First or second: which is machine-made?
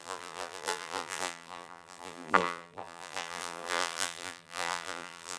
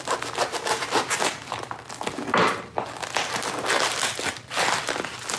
first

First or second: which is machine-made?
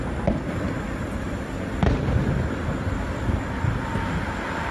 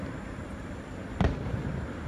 second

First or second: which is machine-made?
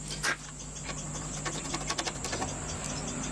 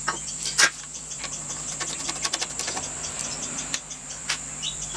second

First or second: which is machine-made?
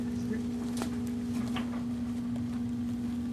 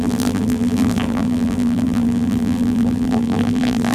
second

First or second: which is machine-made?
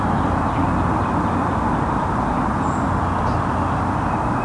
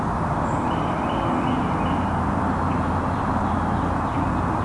first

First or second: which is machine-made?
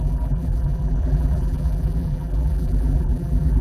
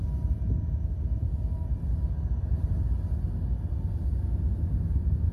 first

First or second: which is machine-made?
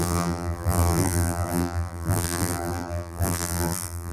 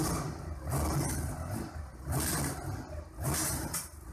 first